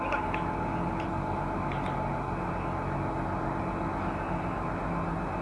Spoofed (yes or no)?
no